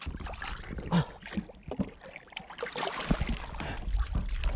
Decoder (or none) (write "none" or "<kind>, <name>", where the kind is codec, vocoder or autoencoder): none